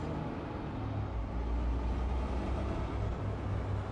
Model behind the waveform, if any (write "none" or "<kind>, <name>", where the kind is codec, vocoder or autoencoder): none